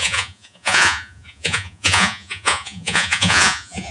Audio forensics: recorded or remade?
remade